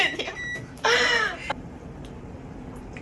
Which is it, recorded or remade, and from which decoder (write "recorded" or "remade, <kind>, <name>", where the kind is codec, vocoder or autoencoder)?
remade, vocoder, BigVGAN v2